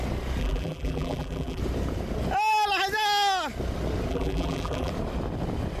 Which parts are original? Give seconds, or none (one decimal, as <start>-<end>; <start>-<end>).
0.0-0.4; 1.6-4.1; 4.9-5.8